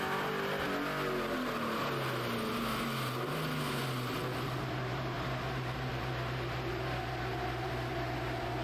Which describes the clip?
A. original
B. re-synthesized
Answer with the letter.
A